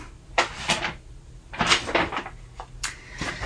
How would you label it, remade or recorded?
recorded